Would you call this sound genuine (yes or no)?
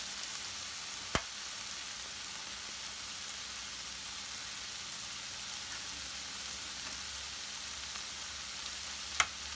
yes